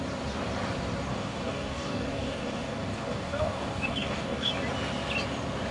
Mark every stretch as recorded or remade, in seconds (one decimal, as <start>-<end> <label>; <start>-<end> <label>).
0.0-1.1 recorded; 1.1-4.5 remade; 4.5-5.7 recorded